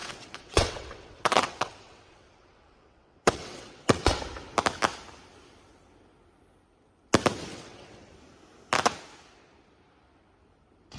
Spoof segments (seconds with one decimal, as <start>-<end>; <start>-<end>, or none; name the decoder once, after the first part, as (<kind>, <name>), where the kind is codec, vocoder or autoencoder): 0.0-4.2 (vocoder, WaveNeXt); 7.5-8.1